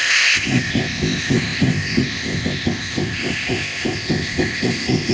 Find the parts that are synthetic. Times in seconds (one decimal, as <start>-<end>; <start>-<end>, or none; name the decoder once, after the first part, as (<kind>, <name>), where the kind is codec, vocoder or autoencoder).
0.0-5.1 (codec, ZipCodec)